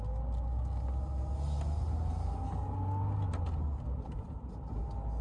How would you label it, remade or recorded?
recorded